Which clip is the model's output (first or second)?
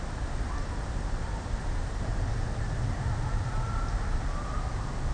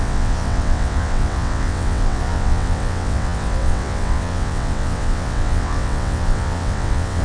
second